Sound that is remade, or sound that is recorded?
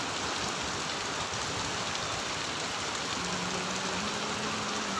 recorded